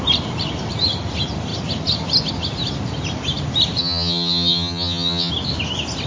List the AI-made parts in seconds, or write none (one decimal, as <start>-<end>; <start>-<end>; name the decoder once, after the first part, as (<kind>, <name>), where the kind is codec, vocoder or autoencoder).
3.8-5.3 (vocoder, HiFi-GAN)